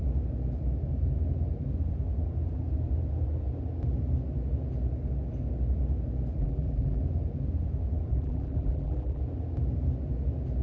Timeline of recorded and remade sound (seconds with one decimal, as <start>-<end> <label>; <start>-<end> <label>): 0.0-6.4 recorded; 6.4-7.0 remade; 7.0-8.1 recorded; 8.1-9.2 remade; 9.2-10.6 recorded